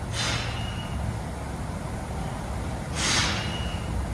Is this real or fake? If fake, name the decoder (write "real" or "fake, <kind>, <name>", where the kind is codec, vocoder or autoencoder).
real